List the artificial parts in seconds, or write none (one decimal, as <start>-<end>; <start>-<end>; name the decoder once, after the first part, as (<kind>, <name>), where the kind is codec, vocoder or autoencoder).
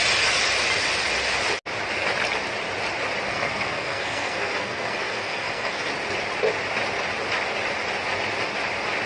3.3-5.9 (codec, SNAC)